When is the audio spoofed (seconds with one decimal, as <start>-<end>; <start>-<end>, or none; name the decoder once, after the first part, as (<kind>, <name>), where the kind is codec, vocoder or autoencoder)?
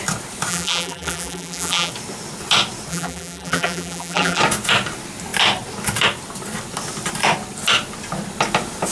0.5-1.9 (vocoder, BigVGAN v2); 2.9-4.4